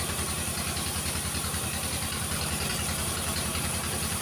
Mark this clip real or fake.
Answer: fake